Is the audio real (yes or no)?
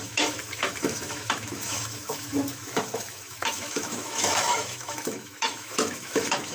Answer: no